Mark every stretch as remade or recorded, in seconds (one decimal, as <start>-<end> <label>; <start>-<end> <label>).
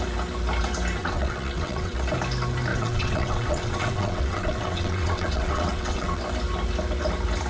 0.0-1.0 recorded; 1.0-2.1 remade; 2.1-2.7 recorded; 2.7-6.2 remade; 6.2-7.5 recorded